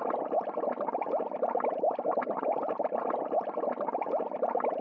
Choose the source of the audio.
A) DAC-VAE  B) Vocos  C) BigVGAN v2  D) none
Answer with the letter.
D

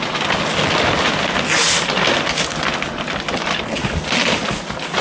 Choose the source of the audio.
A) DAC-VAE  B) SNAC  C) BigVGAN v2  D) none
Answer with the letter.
D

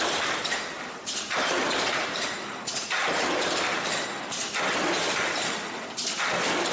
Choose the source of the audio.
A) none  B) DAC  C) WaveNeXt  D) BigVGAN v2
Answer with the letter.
D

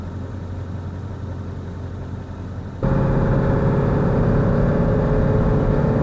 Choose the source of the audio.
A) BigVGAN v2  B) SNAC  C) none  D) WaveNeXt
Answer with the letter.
C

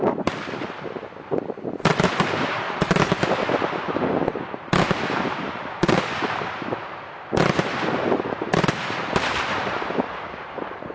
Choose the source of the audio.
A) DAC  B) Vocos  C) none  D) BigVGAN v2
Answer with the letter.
D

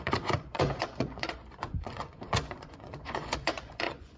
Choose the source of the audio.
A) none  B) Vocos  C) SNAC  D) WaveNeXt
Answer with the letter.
B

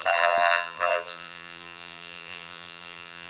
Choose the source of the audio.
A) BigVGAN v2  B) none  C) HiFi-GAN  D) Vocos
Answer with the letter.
A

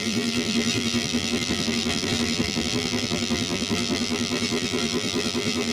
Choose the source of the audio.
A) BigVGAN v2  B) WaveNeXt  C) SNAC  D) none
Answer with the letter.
A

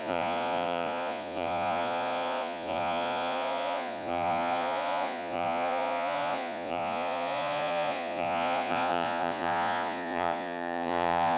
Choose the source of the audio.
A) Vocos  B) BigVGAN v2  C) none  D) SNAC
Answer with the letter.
A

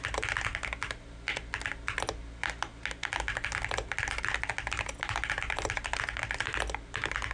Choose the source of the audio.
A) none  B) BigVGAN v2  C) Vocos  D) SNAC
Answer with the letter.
A